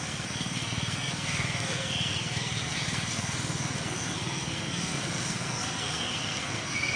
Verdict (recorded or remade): remade